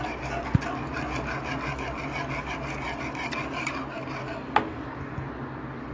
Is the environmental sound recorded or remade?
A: recorded